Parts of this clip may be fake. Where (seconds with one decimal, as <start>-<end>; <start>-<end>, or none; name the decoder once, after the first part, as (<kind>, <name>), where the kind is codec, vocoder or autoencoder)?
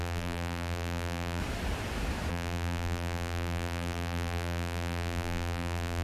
0.0-1.4 (vocoder, BigVGAN v2); 2.3-6.0